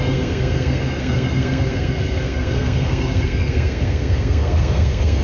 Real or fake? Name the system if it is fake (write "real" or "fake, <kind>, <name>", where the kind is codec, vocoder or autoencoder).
fake, codec, SNAC